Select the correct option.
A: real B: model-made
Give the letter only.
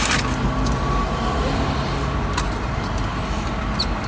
A